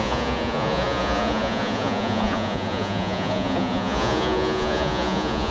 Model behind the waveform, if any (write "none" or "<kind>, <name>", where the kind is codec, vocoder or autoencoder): vocoder, Vocos